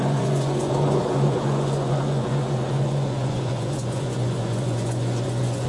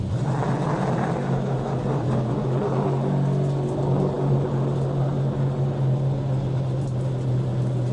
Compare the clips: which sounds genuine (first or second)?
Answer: second